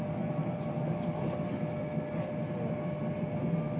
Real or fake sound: real